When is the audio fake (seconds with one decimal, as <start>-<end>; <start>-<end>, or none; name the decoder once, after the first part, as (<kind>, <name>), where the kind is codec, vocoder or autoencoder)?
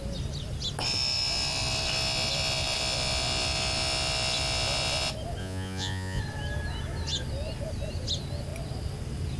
5.4-6.2 (vocoder, Vocos)